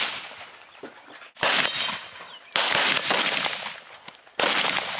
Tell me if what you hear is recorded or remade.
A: recorded